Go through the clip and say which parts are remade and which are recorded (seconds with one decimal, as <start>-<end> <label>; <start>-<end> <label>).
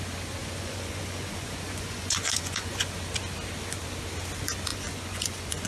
0.0-0.4 recorded; 0.4-2.9 remade; 2.9-4.7 recorded; 4.7-5.7 remade